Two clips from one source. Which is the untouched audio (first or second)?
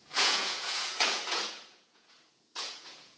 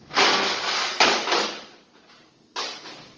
second